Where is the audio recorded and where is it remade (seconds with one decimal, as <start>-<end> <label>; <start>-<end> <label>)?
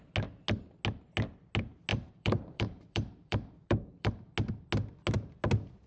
0.0-1.9 recorded; 1.9-4.1 remade; 4.1-5.9 recorded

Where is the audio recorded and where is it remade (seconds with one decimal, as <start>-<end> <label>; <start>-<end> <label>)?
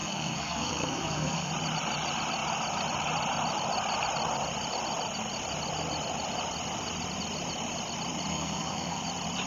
0.0-1.5 remade; 1.5-8.3 recorded; 8.3-9.0 remade; 9.0-9.5 recorded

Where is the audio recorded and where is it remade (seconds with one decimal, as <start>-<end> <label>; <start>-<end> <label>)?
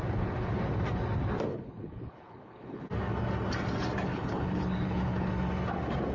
0.0-1.5 recorded; 1.5-2.8 remade; 2.8-4.1 recorded; 4.1-5.3 remade; 5.3-6.1 recorded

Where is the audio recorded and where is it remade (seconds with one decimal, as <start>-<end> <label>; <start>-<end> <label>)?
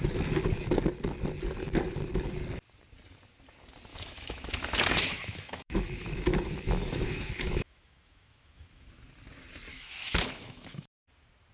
0.0-3.9 recorded; 3.9-8.9 remade; 8.9-9.7 recorded; 9.7-10.9 remade; 10.9-11.5 recorded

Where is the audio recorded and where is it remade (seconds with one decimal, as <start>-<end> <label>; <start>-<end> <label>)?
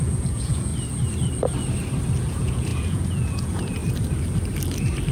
0.0-0.7 remade; 0.7-2.2 recorded; 2.2-3.8 remade; 3.8-5.1 recorded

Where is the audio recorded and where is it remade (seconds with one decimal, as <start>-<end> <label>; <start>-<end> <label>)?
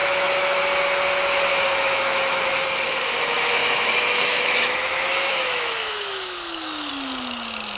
0.0-0.6 remade; 0.6-1.5 recorded; 1.5-2.5 remade; 2.5-3.6 recorded; 3.6-6.9 remade; 6.9-7.8 recorded